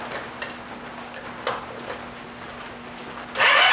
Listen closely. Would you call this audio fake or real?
real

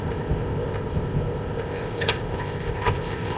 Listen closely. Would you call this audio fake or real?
fake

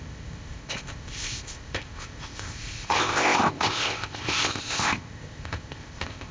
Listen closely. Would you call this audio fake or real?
fake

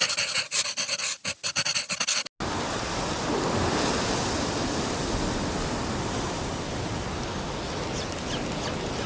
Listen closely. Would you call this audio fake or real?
real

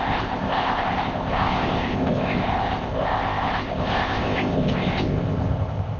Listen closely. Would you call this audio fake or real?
fake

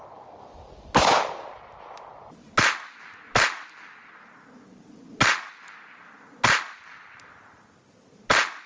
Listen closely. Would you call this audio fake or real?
real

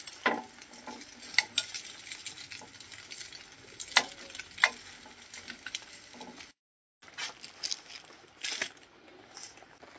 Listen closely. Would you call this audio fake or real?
real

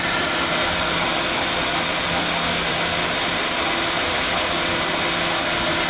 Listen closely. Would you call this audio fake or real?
real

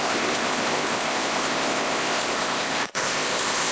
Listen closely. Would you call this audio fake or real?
fake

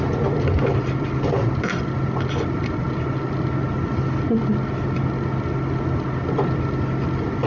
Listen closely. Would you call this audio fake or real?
real